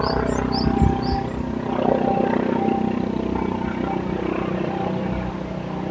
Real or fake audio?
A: real